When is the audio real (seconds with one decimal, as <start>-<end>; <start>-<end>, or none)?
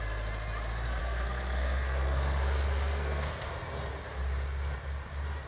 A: 0.0-1.0; 3.5-5.5